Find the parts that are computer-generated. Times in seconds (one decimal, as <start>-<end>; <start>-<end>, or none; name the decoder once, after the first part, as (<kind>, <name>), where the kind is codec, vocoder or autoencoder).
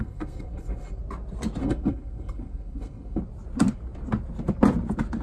0.0-1.0 (codec, SNAC); 1.6-3.2